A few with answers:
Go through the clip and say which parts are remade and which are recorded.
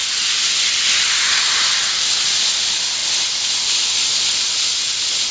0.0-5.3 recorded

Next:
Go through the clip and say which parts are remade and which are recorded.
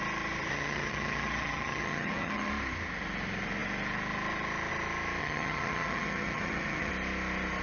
0.0-0.5 recorded; 0.5-2.5 remade; 2.5-5.2 recorded; 5.2-6.9 remade; 6.9-7.6 recorded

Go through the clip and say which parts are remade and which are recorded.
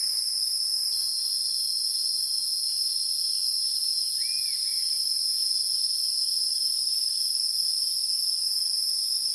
0.0-0.7 remade; 0.7-1.7 recorded; 1.7-5.4 remade; 5.4-6.7 recorded; 6.7-8.0 remade; 8.0-8.7 recorded; 8.7-9.3 remade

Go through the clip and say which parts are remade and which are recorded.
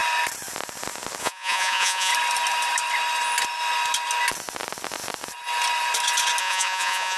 0.0-1.2 recorded; 1.2-2.1 remade; 2.1-6.4 recorded; 6.4-7.2 remade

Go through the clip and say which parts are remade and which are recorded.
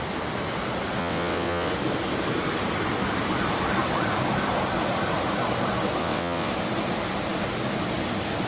0.0-1.0 recorded; 1.0-1.7 remade; 1.7-6.0 recorded; 6.0-6.5 remade; 6.5-8.5 recorded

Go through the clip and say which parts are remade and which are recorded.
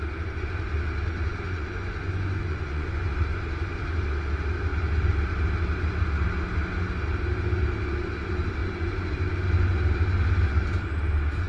0.0-1.3 recorded; 1.3-3.0 remade; 3.0-8.6 recorded; 8.6-9.1 remade; 9.1-11.5 recorded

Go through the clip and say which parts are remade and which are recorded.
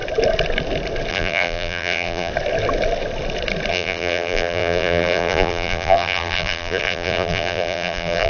0.0-1.1 recorded; 1.1-2.3 remade; 2.3-3.7 recorded; 3.7-8.3 remade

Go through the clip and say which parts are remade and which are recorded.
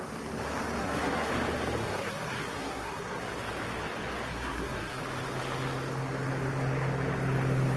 0.0-0.8 recorded; 0.8-1.3 remade; 1.3-1.8 recorded; 1.8-3.2 remade; 3.2-4.3 recorded; 4.3-5.0 remade; 5.0-7.8 recorded